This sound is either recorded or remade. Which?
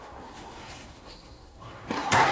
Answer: remade